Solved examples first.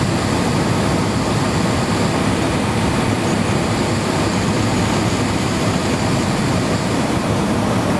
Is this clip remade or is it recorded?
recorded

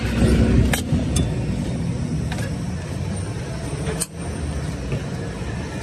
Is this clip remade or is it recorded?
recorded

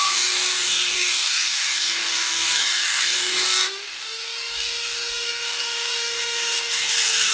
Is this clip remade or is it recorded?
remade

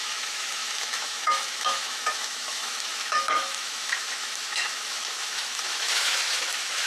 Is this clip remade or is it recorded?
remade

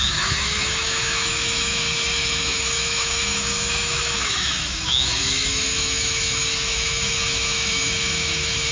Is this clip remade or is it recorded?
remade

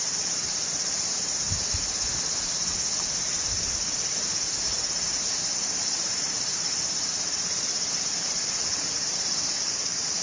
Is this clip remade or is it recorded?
remade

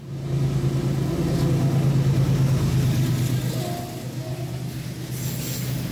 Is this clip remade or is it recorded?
recorded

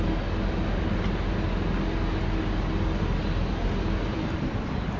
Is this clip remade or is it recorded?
recorded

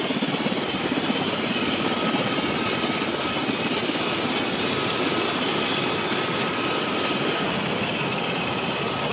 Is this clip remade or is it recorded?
recorded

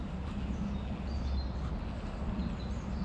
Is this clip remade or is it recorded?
recorded